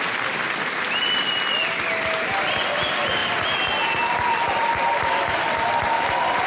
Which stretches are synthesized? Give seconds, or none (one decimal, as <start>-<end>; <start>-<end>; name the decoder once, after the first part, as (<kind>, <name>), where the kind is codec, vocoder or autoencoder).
none